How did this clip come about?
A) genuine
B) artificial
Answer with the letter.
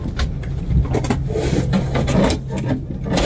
A